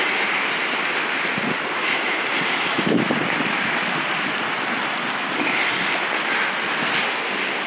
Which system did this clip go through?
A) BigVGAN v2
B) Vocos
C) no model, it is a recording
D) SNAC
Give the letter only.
C